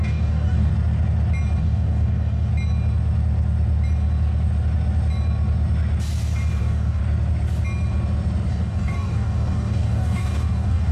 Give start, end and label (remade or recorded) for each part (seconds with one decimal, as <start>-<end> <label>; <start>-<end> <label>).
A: 0.0-0.7 remade; 0.7-1.6 recorded; 1.6-2.5 remade; 2.5-6.6 recorded; 6.6-7.0 remade; 7.0-8.5 recorded; 8.5-10.9 remade